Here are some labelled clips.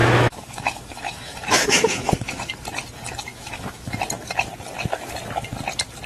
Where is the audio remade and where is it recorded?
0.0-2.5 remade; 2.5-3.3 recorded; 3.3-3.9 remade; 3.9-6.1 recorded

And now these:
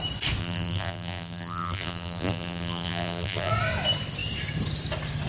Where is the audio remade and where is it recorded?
0.0-0.4 recorded; 0.4-3.5 remade; 3.5-5.3 recorded

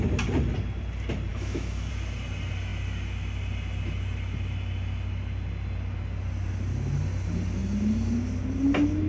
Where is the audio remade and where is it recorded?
0.0-1.3 recorded; 1.3-1.9 remade; 1.9-9.1 recorded

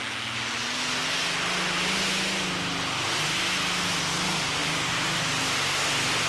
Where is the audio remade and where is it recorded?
0.0-4.6 recorded; 4.6-5.4 remade; 5.4-6.3 recorded

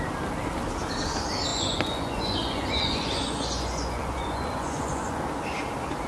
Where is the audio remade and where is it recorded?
0.0-1.5 recorded; 1.5-5.2 remade; 5.2-6.1 recorded

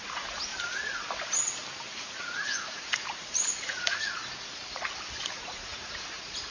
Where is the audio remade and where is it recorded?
0.0-0.5 remade; 0.5-2.0 recorded; 2.0-4.2 remade; 4.2-5.3 recorded; 5.3-6.5 remade

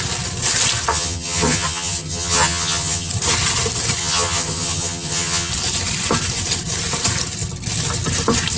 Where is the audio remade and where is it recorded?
0.0-0.9 recorded; 0.9-3.1 remade; 3.1-4.0 recorded; 4.0-5.5 remade; 5.5-8.6 recorded

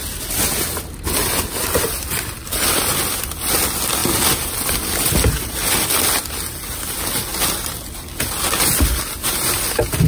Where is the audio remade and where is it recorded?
0.0-1.5 recorded; 1.5-2.9 remade; 2.9-10.1 recorded